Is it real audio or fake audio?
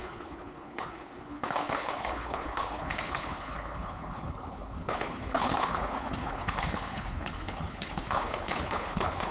fake